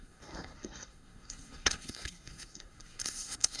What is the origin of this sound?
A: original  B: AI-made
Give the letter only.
B